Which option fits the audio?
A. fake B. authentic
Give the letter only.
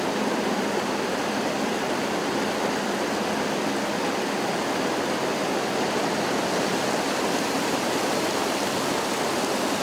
B